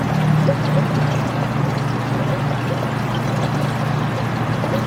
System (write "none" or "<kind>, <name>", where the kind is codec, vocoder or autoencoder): none